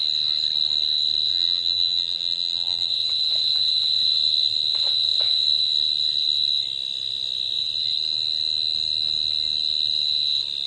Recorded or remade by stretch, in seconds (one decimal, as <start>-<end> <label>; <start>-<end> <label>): 0.0-1.3 recorded; 1.3-2.9 remade; 2.9-10.7 recorded